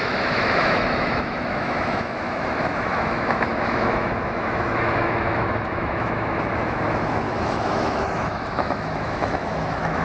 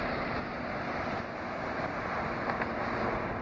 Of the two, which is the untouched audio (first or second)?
second